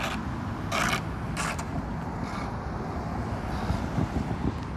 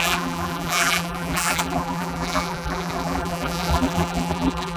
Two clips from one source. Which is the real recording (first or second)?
first